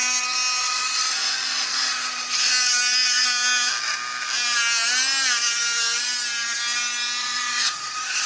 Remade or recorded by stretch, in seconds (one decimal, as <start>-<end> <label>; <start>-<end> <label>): 0.0-0.6 recorded; 0.6-2.5 remade; 2.5-7.2 recorded; 7.2-8.3 remade